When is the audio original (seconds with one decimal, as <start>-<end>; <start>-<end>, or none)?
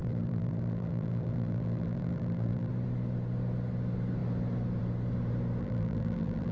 2.7-5.6